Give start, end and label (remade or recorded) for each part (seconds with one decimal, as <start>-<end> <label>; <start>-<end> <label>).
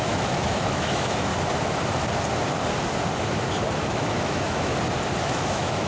0.0-1.3 remade; 1.3-3.8 recorded; 3.8-4.7 remade; 4.7-5.2 recorded; 5.2-5.9 remade